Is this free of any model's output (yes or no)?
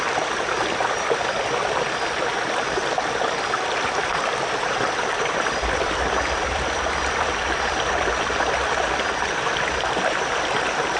yes